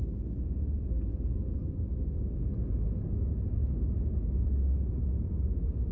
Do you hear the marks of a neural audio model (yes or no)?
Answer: no